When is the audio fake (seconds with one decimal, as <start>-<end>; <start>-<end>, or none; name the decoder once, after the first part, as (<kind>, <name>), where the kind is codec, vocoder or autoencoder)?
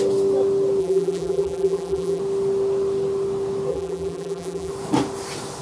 0.8-2.2 (vocoder, BigVGAN v2); 3.7-4.7